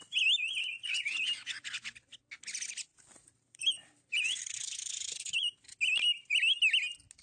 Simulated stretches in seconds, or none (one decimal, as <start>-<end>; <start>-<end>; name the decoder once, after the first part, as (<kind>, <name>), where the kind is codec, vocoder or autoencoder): 2.9-5.8 (vocoder, BigVGAN v2)